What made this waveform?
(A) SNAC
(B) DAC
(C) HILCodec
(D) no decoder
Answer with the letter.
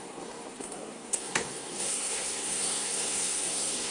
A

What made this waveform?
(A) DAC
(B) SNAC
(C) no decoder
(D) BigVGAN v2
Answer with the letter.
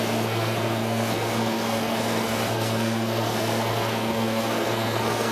B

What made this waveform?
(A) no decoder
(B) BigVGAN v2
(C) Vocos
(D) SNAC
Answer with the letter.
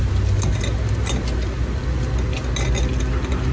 A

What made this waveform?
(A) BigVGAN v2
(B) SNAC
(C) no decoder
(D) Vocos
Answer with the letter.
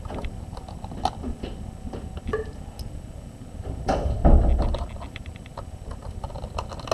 C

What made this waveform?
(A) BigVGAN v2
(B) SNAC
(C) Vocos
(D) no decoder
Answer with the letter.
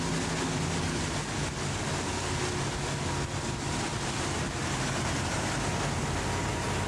D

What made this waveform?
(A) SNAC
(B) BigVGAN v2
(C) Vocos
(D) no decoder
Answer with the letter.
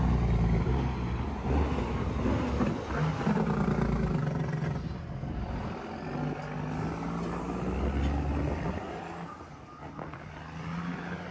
D